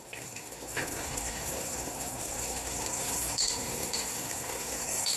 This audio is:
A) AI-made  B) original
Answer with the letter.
A